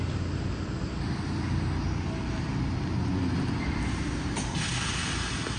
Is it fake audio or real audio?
real